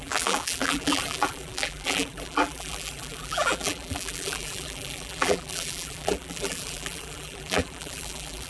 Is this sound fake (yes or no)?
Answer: yes